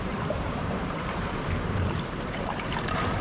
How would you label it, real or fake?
fake